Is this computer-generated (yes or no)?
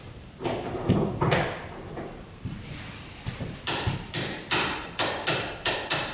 yes